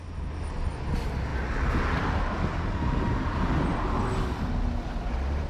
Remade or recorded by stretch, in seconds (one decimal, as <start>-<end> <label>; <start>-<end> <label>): 0.0-5.5 recorded